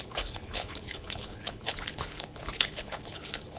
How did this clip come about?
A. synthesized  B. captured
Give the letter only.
A